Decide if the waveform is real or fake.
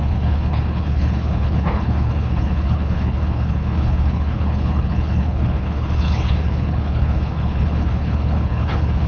fake